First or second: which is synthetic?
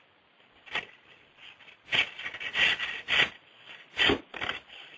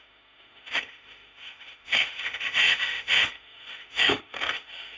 second